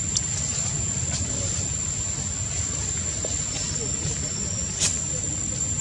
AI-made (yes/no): no